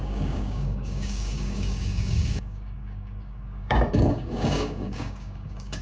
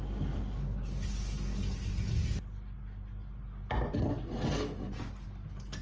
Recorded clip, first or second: second